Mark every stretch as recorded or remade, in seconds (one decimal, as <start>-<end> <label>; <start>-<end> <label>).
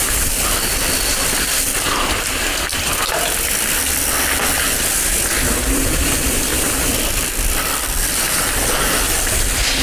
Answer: 0.0-2.7 remade; 2.7-5.6 recorded; 5.6-9.8 remade